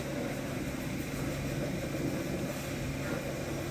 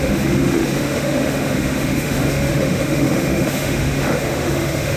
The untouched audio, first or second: first